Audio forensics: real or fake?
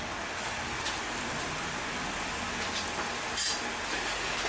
real